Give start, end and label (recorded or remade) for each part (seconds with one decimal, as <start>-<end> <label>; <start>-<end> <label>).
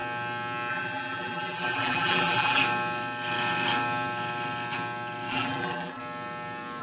0.0-0.7 recorded; 0.7-2.6 remade; 2.6-5.3 recorded; 5.3-6.0 remade; 6.0-6.8 recorded